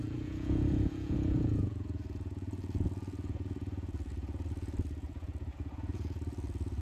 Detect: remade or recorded remade